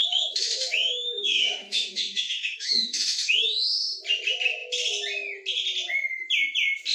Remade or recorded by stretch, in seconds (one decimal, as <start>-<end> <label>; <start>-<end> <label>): 0.0-4.0 remade; 4.0-6.9 recorded